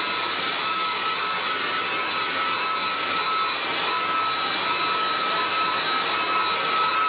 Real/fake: real